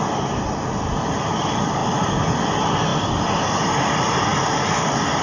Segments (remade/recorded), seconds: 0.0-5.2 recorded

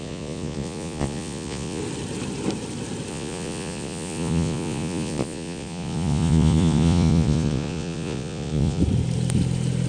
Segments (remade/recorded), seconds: 0.0-1.8 remade; 1.8-3.1 recorded; 3.1-8.8 remade; 8.8-9.9 recorded

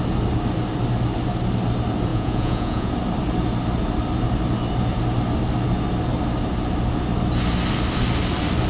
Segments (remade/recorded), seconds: 0.0-2.1 recorded; 2.1-2.9 remade; 2.9-8.7 recorded

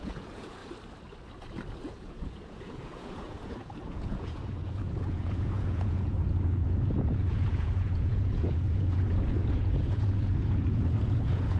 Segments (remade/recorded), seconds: 0.0-0.6 remade; 0.6-1.8 recorded; 1.8-11.6 remade

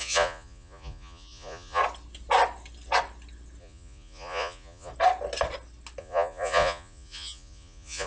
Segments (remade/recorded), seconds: 0.0-1.8 remade; 1.8-3.6 recorded; 3.6-4.9 remade; 4.9-6.0 recorded; 6.0-8.1 remade

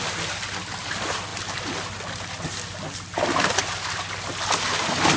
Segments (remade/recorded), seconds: 0.0-5.2 recorded